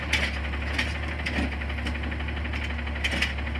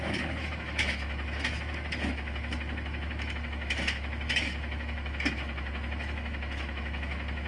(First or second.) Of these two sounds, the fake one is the second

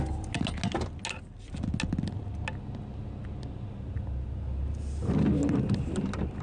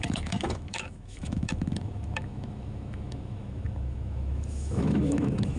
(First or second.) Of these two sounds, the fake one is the second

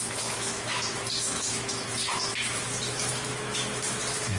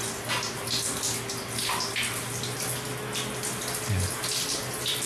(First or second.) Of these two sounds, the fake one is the first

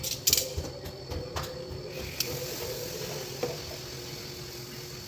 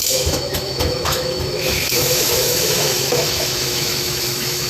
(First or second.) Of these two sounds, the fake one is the second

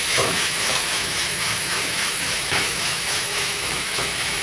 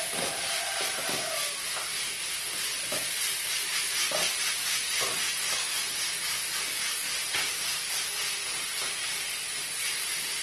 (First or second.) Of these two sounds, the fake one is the first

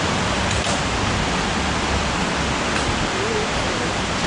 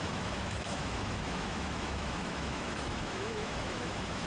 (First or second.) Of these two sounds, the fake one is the second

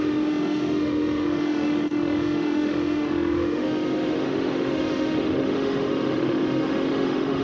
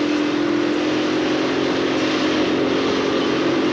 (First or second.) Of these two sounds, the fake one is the first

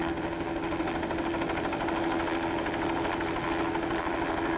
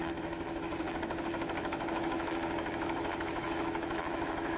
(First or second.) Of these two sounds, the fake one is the second